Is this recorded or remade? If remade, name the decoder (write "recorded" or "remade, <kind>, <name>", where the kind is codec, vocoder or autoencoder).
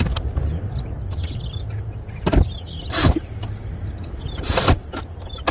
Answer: recorded